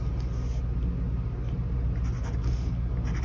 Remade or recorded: recorded